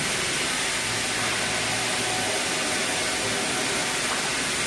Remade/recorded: recorded